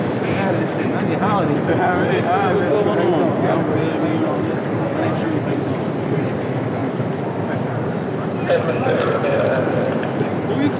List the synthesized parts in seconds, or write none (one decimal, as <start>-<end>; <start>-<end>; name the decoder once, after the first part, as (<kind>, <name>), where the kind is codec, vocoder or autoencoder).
0.0-6.8 (vocoder, BigVGAN v2); 7.9-10.8

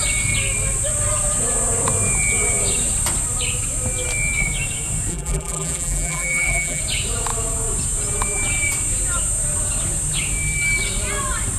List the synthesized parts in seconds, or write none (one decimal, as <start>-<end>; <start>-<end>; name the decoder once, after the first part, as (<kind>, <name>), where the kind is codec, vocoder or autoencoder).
5.1-6.8 (vocoder, BigVGAN v2)

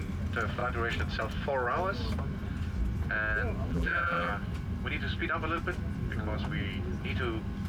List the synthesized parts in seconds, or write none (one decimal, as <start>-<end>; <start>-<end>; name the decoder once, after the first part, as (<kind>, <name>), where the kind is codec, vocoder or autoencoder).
3.7-4.3 (vocoder, BigVGAN v2)

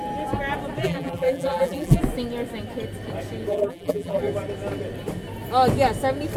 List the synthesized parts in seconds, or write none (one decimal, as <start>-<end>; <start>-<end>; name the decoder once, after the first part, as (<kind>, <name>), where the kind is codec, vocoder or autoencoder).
0.8-2.0 (vocoder, BigVGAN v2); 3.5-4.2

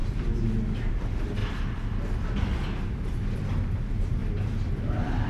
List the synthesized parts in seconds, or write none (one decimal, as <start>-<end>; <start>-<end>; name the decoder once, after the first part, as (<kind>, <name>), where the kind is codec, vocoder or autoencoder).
none

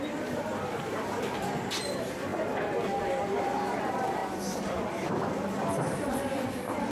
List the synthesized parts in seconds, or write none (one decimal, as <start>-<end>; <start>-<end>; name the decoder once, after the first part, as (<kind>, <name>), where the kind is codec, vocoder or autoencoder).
0.0-2.3 (vocoder, BigVGAN v2); 3.8-4.2; 4.8-6.9

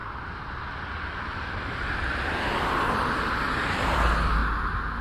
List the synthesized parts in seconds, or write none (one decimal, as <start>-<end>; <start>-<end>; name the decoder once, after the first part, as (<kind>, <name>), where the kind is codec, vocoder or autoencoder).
0.0-4.4 (vocoder, BigVGAN v2)